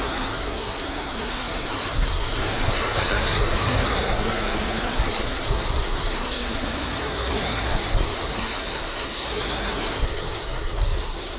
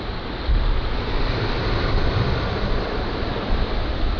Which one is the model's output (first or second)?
first